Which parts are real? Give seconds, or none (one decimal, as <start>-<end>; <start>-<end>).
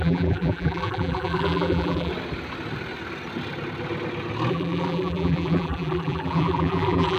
2.1-4.5